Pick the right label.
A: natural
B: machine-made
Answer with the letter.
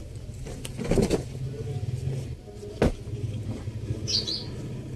A